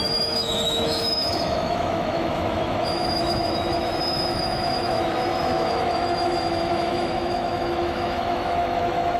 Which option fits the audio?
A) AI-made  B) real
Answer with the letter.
A